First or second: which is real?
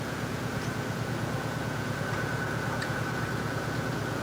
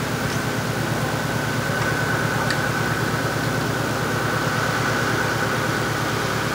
second